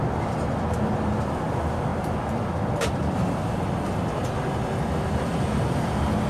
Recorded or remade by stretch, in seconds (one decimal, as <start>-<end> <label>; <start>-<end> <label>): 0.0-6.3 recorded